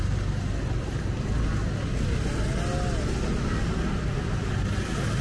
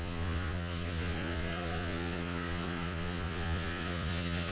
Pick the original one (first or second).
first